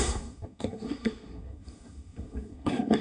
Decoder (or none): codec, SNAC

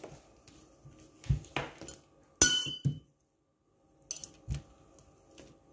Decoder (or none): none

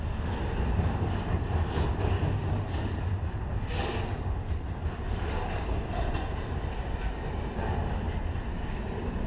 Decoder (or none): none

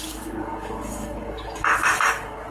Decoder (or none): codec, DAC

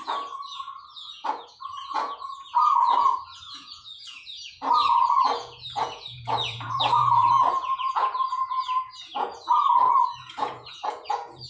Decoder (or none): vocoder, Vocos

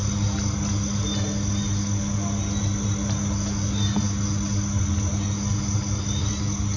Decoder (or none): none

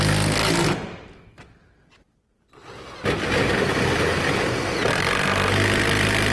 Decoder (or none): none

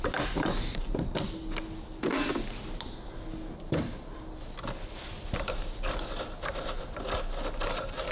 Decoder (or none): none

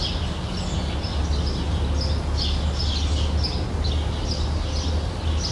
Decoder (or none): none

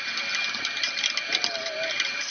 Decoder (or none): none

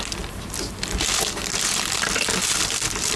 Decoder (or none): none